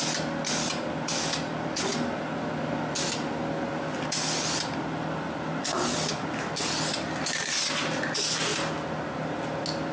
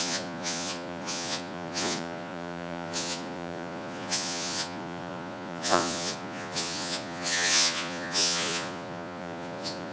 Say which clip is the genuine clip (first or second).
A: first